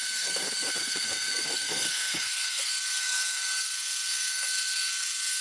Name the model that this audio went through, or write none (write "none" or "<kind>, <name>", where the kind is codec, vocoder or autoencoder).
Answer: codec, SNAC